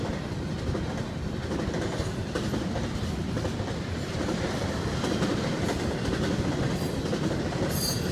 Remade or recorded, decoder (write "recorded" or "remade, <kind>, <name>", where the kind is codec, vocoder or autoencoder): recorded